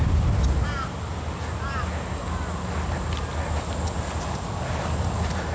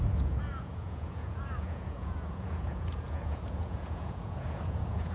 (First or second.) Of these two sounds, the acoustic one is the first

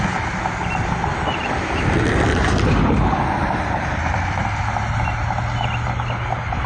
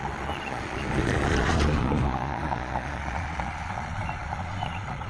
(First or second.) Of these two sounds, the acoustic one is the first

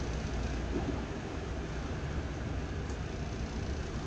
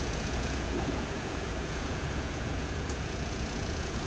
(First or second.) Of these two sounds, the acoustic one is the first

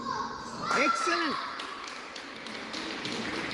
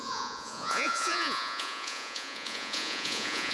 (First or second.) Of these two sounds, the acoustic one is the first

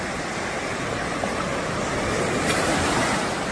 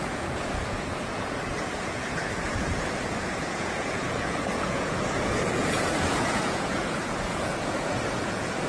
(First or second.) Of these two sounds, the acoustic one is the first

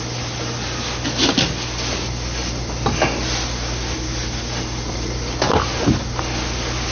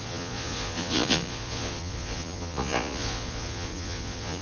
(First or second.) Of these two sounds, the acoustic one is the first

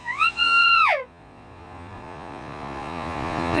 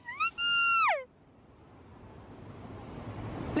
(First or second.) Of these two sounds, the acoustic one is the second